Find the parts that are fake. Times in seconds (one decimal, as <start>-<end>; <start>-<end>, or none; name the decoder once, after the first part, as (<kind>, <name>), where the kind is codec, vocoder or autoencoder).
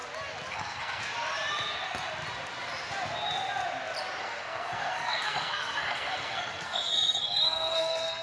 0.5-1.0 (codec, SNAC); 4.2-8.2